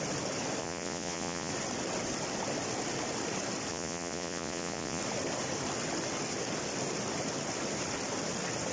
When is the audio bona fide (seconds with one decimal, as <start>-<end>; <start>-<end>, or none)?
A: 0.0-0.6; 1.5-3.7; 5.0-8.7